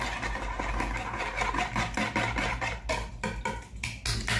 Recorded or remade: recorded